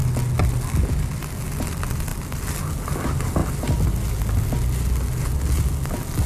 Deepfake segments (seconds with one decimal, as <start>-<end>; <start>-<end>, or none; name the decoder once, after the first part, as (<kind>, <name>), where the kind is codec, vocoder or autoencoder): none